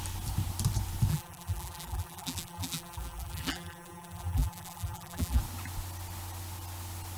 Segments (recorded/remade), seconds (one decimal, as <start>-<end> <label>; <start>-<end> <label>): 0.0-1.1 recorded; 1.1-5.4 remade; 5.4-7.2 recorded